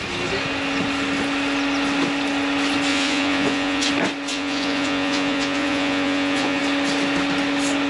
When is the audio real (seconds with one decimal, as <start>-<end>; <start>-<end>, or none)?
0.0-2.9; 3.9-4.3; 6.6-7.9